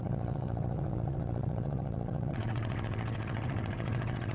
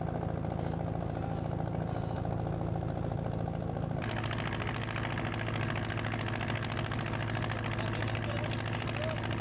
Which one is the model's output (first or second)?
first